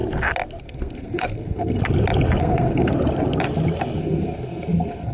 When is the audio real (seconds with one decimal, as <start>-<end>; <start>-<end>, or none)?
0.0-0.6; 1.8-2.4; 2.9-4.0